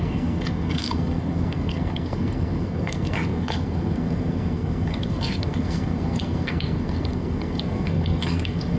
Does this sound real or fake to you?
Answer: fake